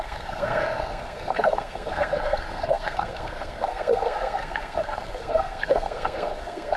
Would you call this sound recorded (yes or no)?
no